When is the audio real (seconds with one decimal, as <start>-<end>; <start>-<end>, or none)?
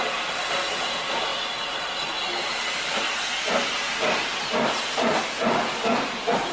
0.0-6.5